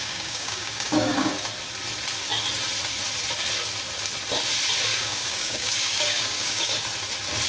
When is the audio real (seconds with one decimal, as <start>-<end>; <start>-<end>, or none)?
1.3-4.9; 6.7-7.5